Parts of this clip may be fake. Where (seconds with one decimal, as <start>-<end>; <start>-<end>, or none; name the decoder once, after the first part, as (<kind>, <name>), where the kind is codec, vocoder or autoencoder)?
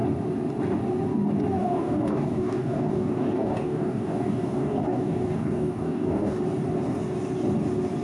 1.6-6.4 (codec, DAC)